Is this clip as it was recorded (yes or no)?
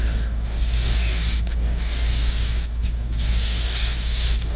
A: no